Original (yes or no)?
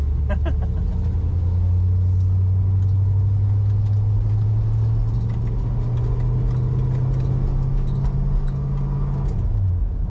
yes